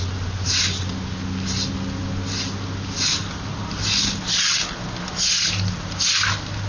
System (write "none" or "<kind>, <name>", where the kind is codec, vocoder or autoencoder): none